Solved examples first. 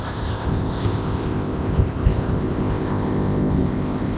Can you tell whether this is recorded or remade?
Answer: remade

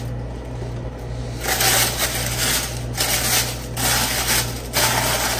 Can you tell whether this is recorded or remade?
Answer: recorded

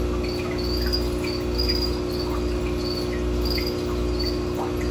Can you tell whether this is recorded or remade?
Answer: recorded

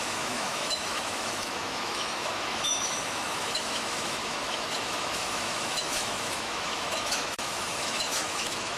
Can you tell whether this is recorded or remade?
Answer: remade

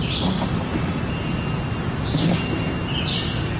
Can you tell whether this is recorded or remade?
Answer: recorded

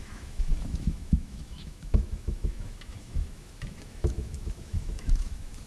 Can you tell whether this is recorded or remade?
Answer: remade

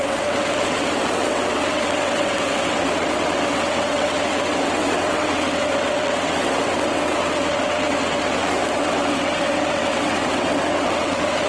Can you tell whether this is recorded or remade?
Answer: remade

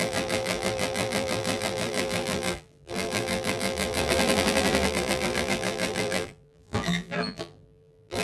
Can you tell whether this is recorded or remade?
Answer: remade